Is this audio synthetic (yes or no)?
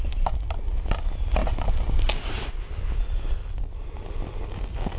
no